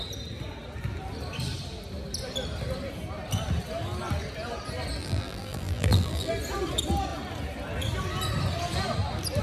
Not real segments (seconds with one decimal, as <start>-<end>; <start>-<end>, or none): 5.0-6.3